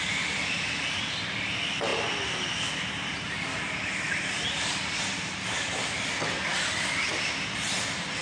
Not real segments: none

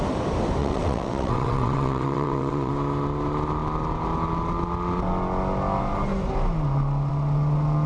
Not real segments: 0.6-2.7 (vocoder, WaveNeXt)